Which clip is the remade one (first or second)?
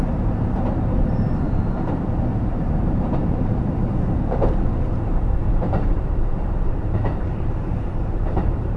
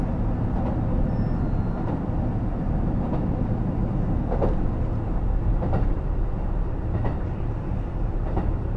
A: first